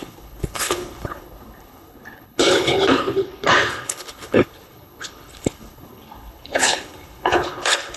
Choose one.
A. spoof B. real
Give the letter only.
A